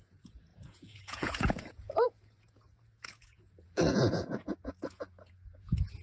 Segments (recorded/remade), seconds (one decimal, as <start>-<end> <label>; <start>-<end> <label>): 0.0-6.0 remade